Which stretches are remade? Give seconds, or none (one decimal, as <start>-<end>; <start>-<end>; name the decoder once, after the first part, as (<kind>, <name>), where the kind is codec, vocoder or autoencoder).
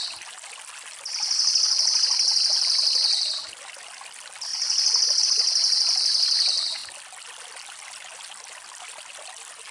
none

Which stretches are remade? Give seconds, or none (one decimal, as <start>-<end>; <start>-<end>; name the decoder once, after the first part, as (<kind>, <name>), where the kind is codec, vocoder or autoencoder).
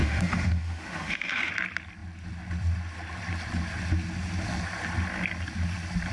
0.0-1.5 (autoencoder, DAC-VAE)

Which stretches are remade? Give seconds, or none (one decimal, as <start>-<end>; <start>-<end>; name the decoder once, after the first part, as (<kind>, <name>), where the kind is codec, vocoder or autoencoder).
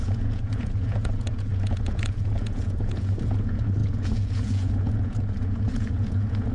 0.0-6.5 (vocoder, Vocos)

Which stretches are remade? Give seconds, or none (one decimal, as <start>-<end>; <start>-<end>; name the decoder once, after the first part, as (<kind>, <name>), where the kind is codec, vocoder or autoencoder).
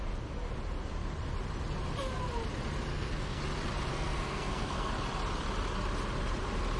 2.9-3.4 (codec, SNAC); 3.9-4.9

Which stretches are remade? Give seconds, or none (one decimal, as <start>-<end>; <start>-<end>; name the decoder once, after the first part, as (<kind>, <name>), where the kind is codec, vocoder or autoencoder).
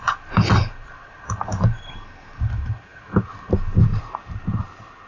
0.7-1.6 (vocoder, BigVGAN v2); 3.9-4.6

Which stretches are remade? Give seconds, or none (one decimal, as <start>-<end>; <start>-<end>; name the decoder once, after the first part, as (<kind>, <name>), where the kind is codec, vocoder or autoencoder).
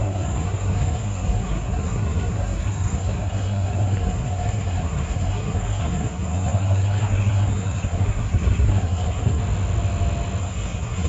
0.0-9.4 (codec, SNAC); 10.4-11.1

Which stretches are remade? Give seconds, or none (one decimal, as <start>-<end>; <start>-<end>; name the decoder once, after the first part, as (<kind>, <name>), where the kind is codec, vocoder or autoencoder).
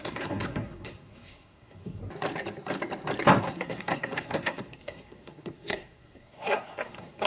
0.0-2.0 (codec, SNAC); 3.4-7.3